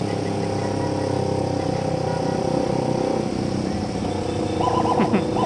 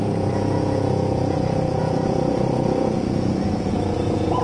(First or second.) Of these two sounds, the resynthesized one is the second